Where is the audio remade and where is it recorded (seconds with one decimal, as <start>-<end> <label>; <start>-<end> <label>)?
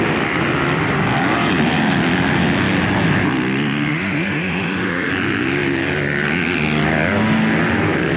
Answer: 0.0-3.9 recorded; 3.9-5.1 remade; 5.1-8.2 recorded